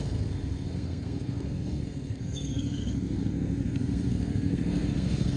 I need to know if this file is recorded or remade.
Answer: remade